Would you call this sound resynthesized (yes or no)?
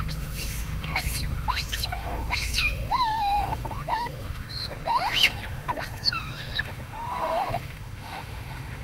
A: yes